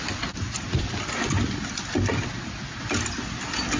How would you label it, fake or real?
real